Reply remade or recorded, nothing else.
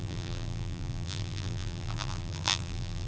remade